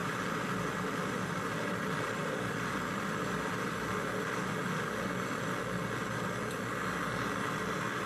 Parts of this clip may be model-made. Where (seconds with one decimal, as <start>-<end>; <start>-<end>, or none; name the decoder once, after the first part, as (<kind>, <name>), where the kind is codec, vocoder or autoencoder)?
0.0-3.9 (vocoder, BigVGAN v2)